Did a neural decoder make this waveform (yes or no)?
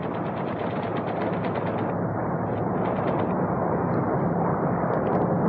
no